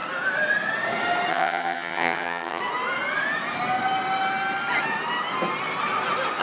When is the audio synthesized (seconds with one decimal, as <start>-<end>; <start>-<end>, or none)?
1.3-2.6